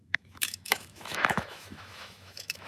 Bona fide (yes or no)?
no